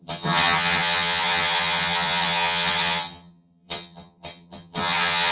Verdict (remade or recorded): remade